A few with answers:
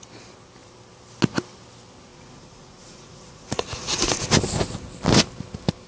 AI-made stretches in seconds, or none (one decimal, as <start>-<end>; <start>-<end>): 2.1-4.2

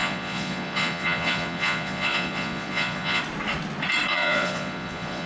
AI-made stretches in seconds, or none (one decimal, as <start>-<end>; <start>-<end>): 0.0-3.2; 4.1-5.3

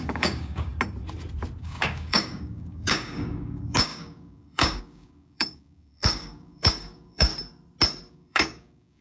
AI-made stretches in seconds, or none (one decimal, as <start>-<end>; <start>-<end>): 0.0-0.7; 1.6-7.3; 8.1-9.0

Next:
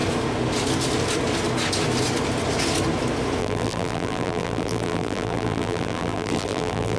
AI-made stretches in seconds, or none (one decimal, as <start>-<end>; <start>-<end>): 3.4-7.0